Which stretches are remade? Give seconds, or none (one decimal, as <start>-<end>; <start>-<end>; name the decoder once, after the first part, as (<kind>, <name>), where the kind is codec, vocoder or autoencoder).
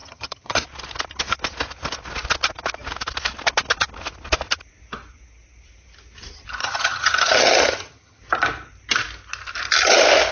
0.0-0.6 (vocoder, HiFi-GAN); 6.6-8.2